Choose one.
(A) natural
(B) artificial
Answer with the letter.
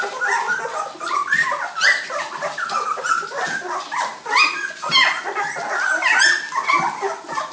A